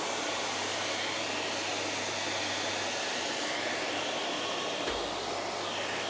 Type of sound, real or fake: real